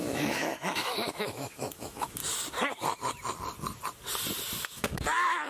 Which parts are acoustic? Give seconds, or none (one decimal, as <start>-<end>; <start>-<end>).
2.2-4.6